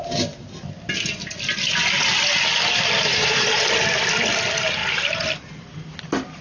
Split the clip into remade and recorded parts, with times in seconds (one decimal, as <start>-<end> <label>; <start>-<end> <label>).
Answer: 0.0-3.1 recorded; 3.1-3.6 remade; 3.6-6.4 recorded